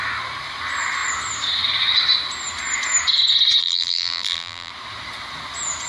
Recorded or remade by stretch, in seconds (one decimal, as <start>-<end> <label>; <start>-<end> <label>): 0.0-3.6 recorded; 3.6-4.7 remade; 4.7-5.9 recorded